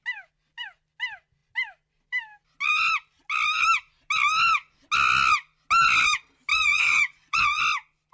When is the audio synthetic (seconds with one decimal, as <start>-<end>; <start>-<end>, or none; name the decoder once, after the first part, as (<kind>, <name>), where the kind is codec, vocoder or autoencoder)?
6.5-7.6 (vocoder, Vocos)